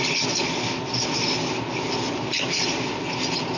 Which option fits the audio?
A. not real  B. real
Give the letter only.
B